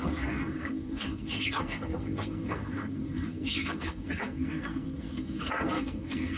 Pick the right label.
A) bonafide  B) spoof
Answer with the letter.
B